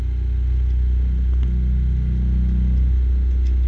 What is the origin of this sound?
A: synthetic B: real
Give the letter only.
B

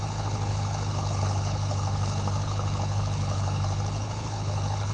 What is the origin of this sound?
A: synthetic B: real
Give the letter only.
A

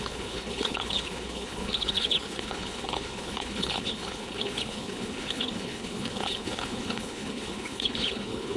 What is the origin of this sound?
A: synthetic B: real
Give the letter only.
A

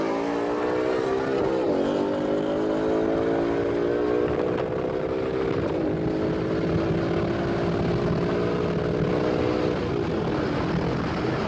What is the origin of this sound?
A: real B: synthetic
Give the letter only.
A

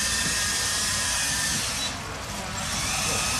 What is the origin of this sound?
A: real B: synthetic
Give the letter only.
A